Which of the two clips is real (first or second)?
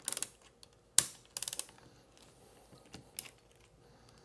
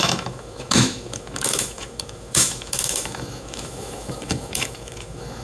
first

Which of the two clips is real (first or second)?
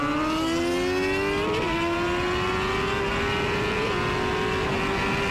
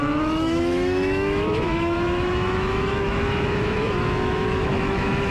first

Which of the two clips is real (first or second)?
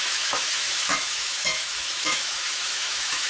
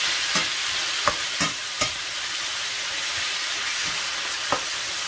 second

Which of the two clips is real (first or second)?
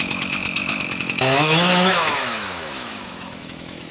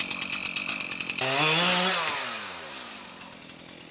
second